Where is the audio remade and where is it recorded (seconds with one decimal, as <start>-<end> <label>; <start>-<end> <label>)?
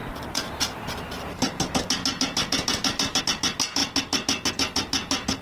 0.0-5.4 recorded